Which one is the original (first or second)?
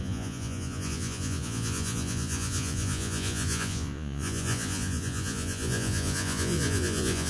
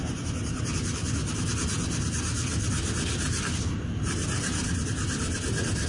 second